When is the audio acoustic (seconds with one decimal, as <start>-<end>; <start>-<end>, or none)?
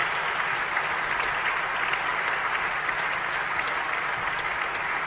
0.0-5.1